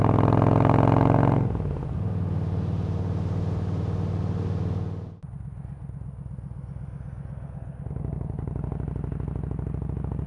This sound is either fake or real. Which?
real